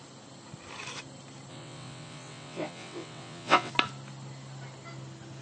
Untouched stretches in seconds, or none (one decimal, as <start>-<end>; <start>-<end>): 0.0-1.5; 3.7-5.4